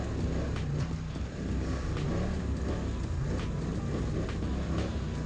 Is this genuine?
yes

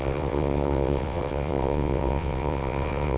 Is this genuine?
no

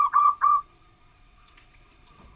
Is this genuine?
no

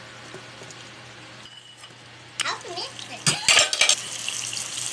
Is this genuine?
yes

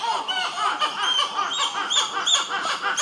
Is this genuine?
yes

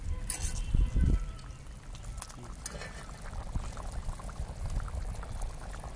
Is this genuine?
yes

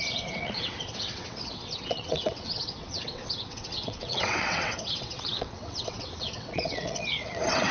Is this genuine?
no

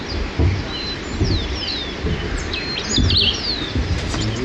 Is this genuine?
yes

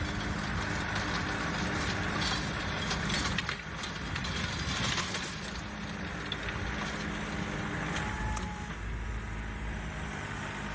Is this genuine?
yes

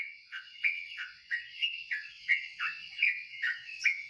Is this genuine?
no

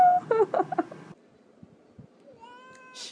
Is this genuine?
yes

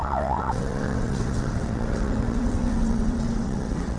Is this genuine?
no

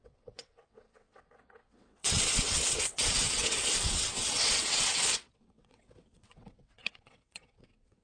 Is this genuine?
no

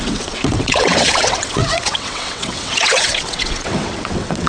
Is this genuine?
no